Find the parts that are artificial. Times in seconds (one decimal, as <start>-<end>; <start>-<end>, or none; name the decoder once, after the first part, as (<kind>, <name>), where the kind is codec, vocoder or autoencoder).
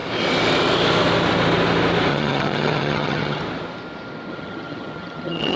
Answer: 2.1-3.4 (vocoder, HiFi-GAN); 4.3-5.6